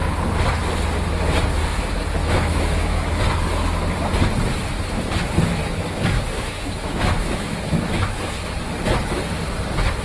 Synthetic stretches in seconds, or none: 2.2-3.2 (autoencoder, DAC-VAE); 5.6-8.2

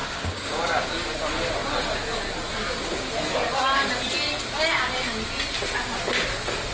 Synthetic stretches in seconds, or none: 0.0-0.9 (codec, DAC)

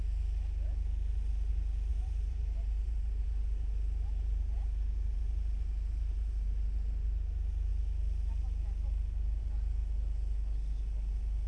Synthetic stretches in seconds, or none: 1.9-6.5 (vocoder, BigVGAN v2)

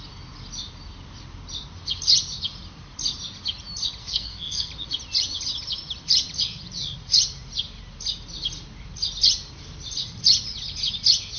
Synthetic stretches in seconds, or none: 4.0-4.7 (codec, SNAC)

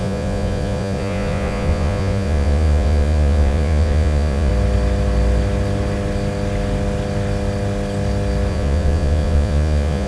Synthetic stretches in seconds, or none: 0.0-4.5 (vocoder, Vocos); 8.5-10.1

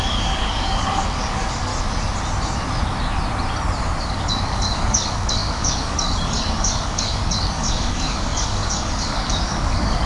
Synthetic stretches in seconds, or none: 0.0-1.7 (codec, DAC); 4.0-10.1

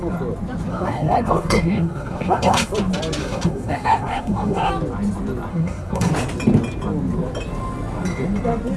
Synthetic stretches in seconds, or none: 0.7-2.7 (codec, SNAC); 3.2-4.7; 5.5-6.1